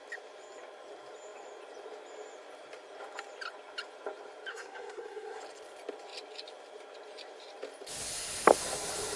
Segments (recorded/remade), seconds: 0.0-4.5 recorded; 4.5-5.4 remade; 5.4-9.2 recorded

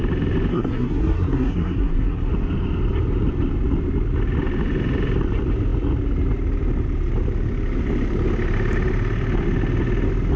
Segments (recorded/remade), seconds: 0.0-0.5 recorded; 0.5-2.3 remade; 2.3-10.4 recorded

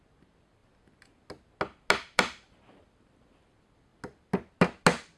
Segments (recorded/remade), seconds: 0.0-5.2 recorded

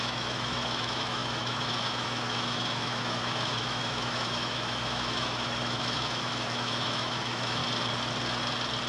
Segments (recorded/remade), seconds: 0.0-7.6 remade; 7.6-8.9 recorded

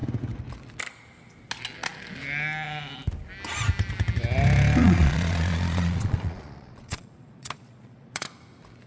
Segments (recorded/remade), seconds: 0.0-4.8 recorded; 4.8-8.3 remade; 8.3-8.9 recorded

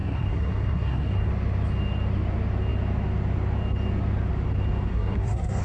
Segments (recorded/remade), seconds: 0.0-1.3 remade; 1.3-4.9 recorded; 4.9-5.6 remade

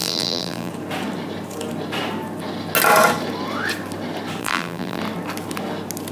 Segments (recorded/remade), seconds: 0.0-0.7 remade; 0.7-4.4 recorded; 4.4-5.0 remade; 5.0-6.1 recorded